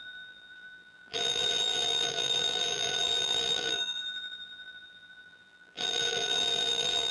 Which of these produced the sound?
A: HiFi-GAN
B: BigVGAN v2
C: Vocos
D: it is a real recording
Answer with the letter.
B